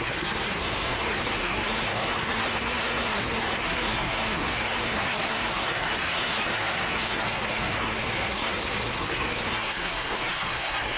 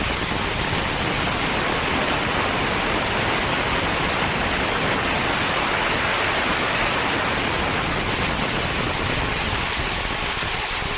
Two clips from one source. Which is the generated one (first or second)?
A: first